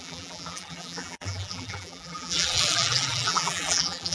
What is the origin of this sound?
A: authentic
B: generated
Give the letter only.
B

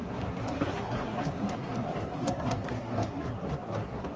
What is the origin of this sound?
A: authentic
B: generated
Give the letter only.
B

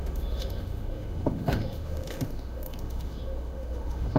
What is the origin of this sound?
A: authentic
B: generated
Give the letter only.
B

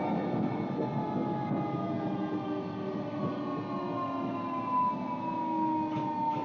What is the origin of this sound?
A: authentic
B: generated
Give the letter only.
A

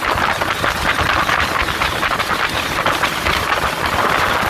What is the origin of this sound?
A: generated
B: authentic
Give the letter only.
B